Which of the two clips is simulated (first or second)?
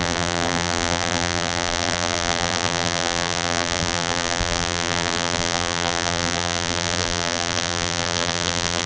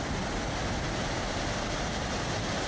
first